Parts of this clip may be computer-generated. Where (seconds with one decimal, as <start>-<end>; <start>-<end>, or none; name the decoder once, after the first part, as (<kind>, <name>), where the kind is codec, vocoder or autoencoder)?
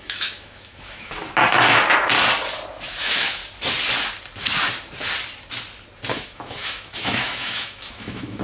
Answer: 0.0-1.2 (autoencoder, DAC-VAE); 3.0-3.4; 6.1-8.4